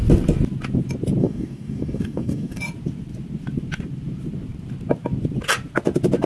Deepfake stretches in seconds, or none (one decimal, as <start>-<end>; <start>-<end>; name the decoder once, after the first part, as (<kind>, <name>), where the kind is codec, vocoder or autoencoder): 1.2-2.6 (codec, DAC)